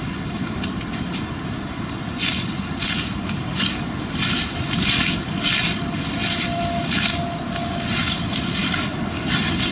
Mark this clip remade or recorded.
recorded